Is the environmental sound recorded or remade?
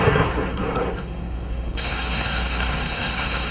remade